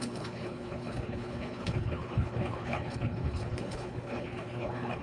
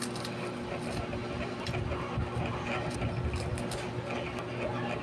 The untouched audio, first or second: second